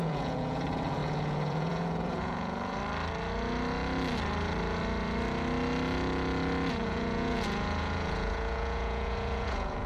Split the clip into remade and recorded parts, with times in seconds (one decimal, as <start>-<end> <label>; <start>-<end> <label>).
0.0-2.8 remade; 2.8-6.7 recorded; 6.7-9.9 remade